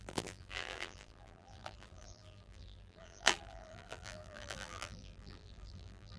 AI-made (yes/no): yes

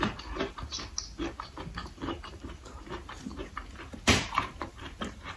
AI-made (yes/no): yes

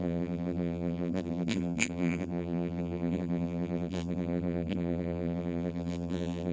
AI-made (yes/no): yes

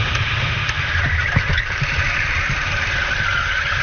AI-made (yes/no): yes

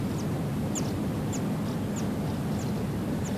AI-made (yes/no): no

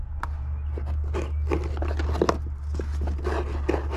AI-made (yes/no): no